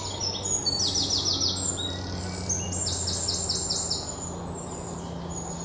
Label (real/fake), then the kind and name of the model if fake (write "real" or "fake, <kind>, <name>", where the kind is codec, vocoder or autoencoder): real